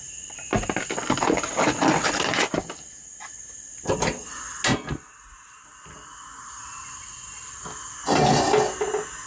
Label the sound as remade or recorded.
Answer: recorded